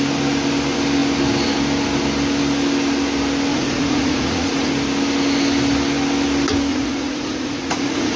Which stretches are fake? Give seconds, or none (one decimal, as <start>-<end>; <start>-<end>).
3.5-4.7; 6.7-8.2